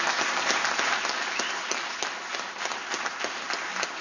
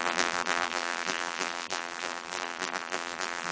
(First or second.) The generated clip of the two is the second